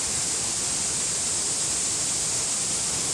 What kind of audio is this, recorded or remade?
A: recorded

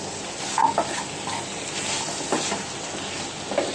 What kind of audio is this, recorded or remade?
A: recorded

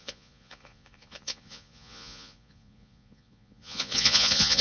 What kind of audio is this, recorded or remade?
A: remade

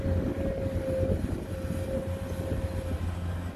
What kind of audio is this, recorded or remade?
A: recorded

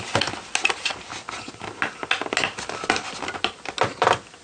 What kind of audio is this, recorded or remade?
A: recorded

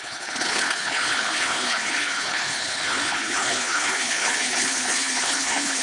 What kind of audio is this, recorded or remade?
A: remade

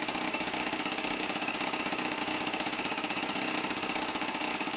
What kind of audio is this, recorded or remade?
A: remade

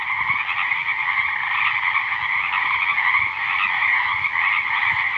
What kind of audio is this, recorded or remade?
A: recorded